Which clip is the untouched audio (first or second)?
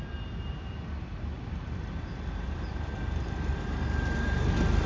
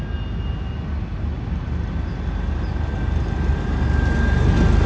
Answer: second